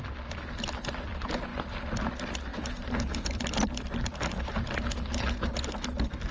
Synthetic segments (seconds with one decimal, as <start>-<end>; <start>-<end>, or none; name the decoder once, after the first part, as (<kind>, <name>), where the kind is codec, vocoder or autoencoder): 2.5-4.1 (vocoder, BigVGAN v2)